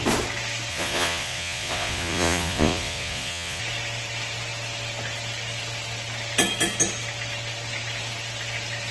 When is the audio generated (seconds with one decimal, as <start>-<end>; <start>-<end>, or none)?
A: 0.7-3.6